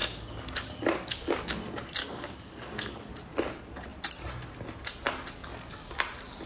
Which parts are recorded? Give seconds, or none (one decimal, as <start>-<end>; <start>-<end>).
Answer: 1.6-2.0; 3.1-5.4; 5.9-6.5